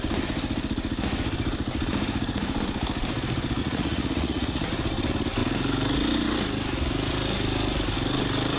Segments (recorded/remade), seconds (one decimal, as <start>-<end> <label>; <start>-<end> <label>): 0.0-3.6 recorded; 3.6-4.7 remade; 4.7-8.6 recorded